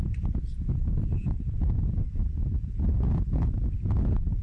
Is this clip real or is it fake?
real